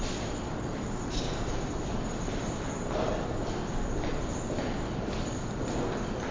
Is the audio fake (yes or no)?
no